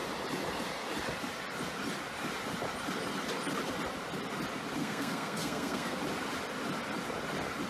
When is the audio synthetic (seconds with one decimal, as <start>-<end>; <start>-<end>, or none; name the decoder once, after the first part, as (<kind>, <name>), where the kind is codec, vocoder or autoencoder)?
4.8-6.0 (codec, SNAC)